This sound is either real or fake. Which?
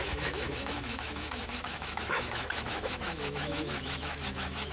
fake